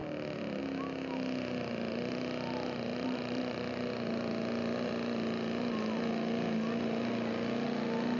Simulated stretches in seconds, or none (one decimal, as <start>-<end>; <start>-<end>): 0.0-0.6; 2.9-3.9